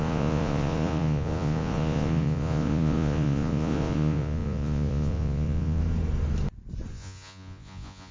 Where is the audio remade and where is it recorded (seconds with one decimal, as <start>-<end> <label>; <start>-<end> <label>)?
0.0-5.8 remade; 5.8-6.9 recorded; 6.9-8.1 remade